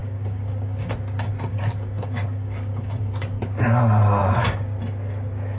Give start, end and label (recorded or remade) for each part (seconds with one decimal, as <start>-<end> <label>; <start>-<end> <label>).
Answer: 0.0-3.4 remade; 3.4-5.6 recorded